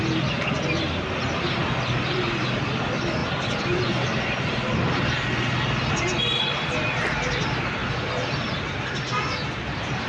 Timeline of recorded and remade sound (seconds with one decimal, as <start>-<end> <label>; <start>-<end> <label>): 0.0-10.1 recorded